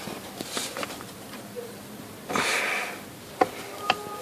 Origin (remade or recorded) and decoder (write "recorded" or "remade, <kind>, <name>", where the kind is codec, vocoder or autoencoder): recorded